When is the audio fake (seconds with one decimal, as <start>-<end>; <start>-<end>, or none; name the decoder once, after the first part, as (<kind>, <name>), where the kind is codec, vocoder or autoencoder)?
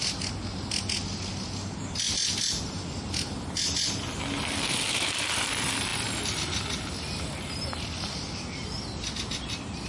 none